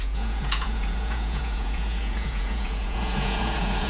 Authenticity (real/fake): fake